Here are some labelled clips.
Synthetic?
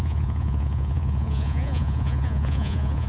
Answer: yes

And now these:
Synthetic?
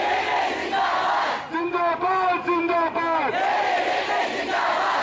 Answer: no